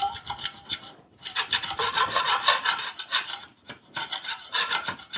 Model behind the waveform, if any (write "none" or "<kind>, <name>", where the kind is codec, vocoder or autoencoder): none